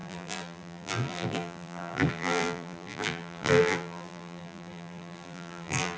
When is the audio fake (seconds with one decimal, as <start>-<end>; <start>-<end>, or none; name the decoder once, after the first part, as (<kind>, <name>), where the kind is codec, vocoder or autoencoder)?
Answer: 0.0-6.0 (vocoder, BigVGAN v2)

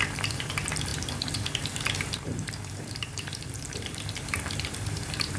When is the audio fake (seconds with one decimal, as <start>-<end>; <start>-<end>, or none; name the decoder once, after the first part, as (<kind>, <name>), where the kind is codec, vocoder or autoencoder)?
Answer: 0.0-5.4 (vocoder, BigVGAN v2)

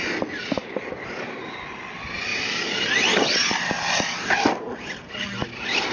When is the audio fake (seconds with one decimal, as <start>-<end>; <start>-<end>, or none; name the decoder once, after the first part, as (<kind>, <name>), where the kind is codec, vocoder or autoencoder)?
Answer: 0.4-0.9 (vocoder, BigVGAN v2); 2.3-3.7

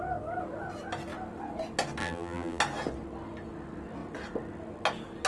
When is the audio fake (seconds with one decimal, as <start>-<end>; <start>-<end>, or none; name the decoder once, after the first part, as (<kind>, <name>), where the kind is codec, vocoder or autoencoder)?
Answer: 2.0-2.6 (vocoder, BigVGAN v2)

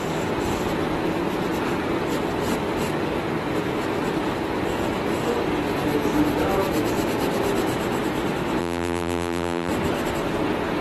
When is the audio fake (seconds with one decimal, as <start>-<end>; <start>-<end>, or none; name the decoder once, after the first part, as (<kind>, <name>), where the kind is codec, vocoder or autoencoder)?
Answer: 8.6-9.7 (vocoder, BigVGAN v2)

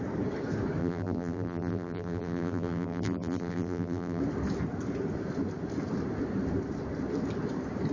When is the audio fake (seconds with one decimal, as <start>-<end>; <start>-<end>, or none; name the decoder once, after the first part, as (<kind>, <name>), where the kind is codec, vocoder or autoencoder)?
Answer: 0.8-4.2 (vocoder, BigVGAN v2)